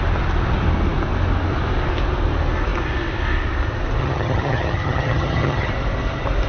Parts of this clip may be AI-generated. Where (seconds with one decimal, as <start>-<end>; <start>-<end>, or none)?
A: 4.0-5.7